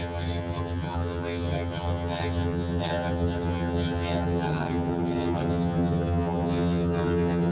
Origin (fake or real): fake